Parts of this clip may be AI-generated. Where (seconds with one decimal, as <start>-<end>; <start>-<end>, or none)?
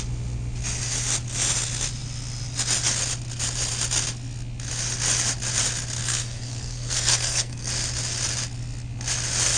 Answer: 6.0-7.7